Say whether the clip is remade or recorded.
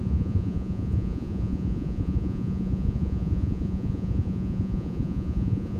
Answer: remade